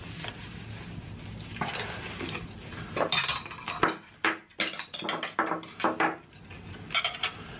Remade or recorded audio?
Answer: recorded